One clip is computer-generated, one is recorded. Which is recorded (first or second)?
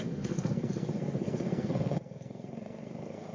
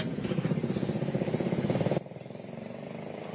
second